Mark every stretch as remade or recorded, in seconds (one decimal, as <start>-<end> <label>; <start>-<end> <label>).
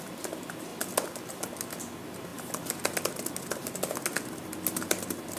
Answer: 0.0-5.4 recorded